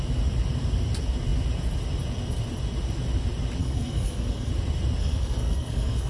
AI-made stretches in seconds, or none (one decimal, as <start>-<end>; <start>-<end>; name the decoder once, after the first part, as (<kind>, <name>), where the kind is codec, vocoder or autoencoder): 3.6-4.5 (codec, SNAC); 5.0-6.1